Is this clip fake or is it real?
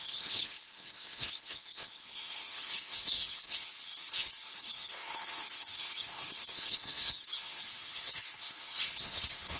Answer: fake